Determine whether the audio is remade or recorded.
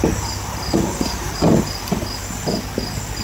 recorded